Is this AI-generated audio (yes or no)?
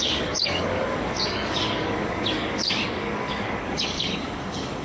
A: yes